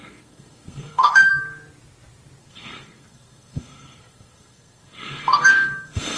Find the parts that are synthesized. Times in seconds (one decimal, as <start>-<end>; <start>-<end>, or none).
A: 0.0-1.3; 2.4-6.2